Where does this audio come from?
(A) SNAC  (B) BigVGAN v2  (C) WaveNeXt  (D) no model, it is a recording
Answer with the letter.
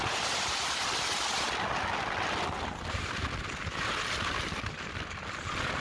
D